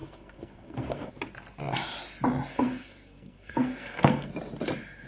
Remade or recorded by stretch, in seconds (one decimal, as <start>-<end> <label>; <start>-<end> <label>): 0.0-1.1 remade; 1.1-2.5 recorded; 2.5-4.3 remade; 4.3-5.1 recorded

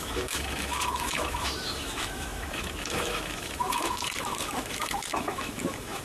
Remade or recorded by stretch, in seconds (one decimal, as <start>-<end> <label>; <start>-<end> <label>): 0.0-6.0 remade

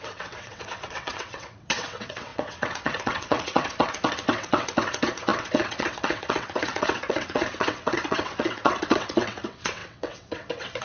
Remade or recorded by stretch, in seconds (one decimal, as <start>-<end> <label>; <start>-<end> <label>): 0.0-10.8 remade

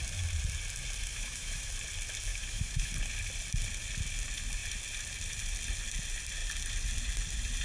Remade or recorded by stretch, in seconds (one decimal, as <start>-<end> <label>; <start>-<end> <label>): 0.0-1.1 recorded; 1.1-1.7 remade; 1.7-2.3 recorded; 2.3-2.9 remade; 2.9-7.6 recorded

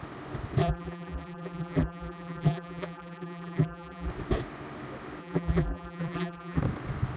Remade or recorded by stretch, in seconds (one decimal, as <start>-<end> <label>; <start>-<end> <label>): 0.0-0.6 recorded; 0.6-4.1 remade; 4.1-5.2 recorded; 5.2-6.6 remade; 6.6-7.2 recorded

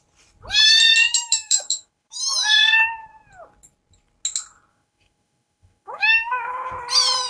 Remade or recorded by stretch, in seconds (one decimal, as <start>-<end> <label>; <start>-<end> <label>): 0.0-1.1 recorded; 1.1-2.2 remade; 2.2-4.7 recorded; 4.7-6.7 remade; 6.7-7.3 recorded

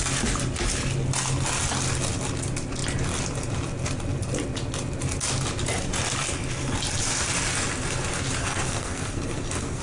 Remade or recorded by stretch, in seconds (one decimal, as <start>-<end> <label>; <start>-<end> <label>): 0.0-8.4 recorded; 8.4-9.8 remade

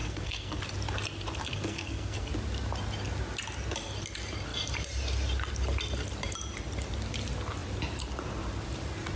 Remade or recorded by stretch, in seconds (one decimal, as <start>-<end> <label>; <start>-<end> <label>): 0.0-0.6 remade; 0.6-1.4 recorded; 1.4-2.3 remade; 2.3-9.2 recorded